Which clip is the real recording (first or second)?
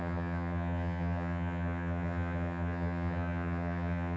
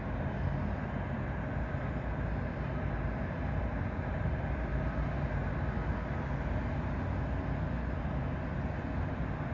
second